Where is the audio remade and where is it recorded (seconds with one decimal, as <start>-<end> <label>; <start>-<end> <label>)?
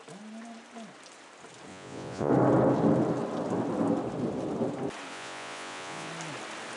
0.0-1.7 recorded; 1.7-2.3 remade; 2.3-5.1 recorded; 5.1-6.1 remade; 6.1-6.8 recorded